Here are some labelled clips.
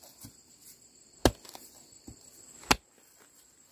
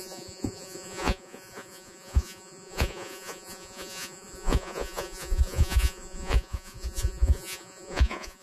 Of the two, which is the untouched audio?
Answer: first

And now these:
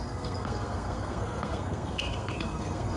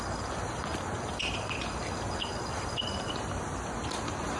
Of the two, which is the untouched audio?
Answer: second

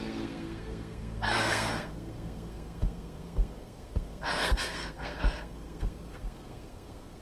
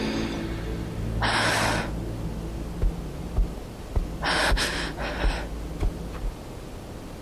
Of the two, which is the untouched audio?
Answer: second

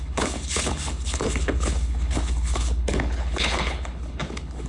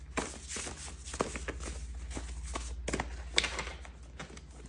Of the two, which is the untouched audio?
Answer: second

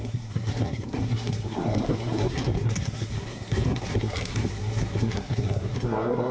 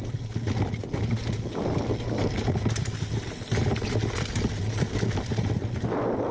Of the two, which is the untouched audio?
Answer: second